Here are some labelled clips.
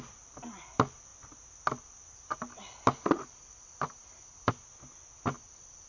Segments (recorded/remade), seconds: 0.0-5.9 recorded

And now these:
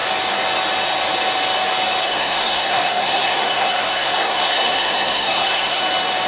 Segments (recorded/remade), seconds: 0.0-2.0 recorded; 2.0-5.8 remade; 5.8-6.3 recorded

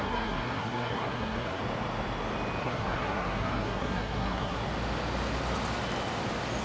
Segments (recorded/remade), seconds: 0.0-1.6 remade; 1.6-2.6 recorded; 2.6-4.6 remade; 4.6-6.6 recorded

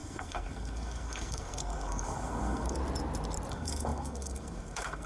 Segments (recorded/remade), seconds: 0.0-2.8 remade; 2.8-3.5 recorded; 3.5-5.1 remade

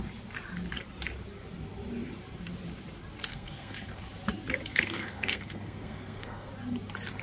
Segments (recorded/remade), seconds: 0.0-3.3 recorded; 3.3-4.0 remade; 4.0-4.7 recorded; 4.7-6.5 remade; 6.5-7.2 recorded

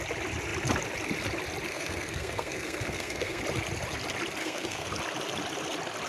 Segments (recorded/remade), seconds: 0.0-1.7 recorded; 1.7-3.4 remade; 3.4-4.4 recorded; 4.4-4.9 remade; 4.9-6.1 recorded

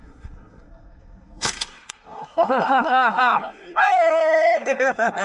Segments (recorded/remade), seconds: 0.0-5.2 remade

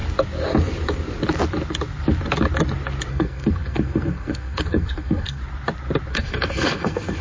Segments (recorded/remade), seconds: 0.0-3.1 recorded; 3.1-5.4 remade; 5.4-6.1 recorded; 6.1-7.2 remade